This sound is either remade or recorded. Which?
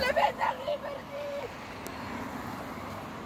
recorded